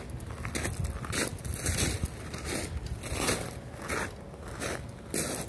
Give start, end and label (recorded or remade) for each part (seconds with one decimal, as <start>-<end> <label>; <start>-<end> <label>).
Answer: 0.0-5.5 recorded